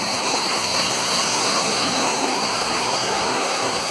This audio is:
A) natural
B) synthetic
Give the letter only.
B